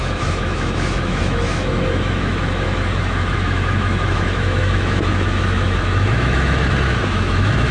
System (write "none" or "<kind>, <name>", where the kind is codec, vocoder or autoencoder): autoencoder, DAC-VAE